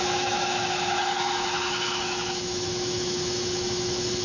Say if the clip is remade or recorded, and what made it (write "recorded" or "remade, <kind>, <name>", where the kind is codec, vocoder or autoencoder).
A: remade, autoencoder, DAC-VAE